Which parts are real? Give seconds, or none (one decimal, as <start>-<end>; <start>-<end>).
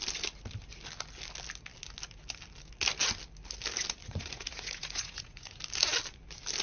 0.0-4.0; 5.6-6.6